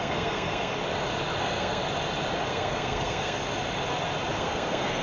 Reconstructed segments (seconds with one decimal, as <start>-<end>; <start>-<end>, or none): 0.0-0.7; 1.4-1.8; 2.5-3.4; 4.3-5.0